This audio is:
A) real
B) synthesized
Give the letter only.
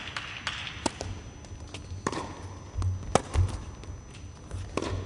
A